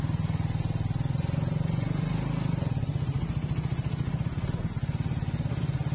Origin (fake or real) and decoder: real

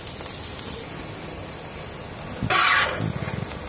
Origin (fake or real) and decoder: real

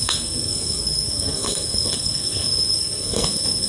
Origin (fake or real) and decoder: fake, codec, SNAC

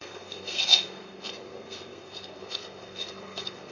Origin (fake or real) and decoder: fake, codec, SNAC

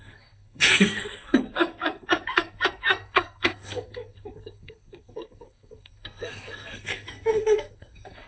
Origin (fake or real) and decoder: fake, codec, SNAC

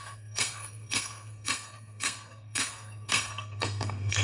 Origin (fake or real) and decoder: fake, codec, SNAC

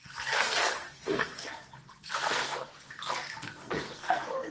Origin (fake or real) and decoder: fake, codec, SNAC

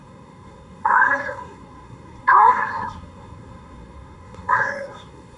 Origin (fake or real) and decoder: fake, codec, SNAC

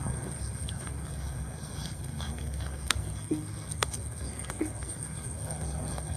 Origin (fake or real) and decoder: fake, codec, SNAC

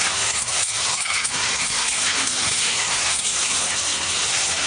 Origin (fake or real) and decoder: fake, codec, SNAC